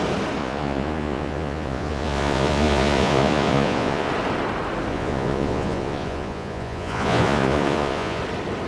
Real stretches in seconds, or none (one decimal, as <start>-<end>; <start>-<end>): 0.0-0.4; 4.1-4.9; 8.2-8.7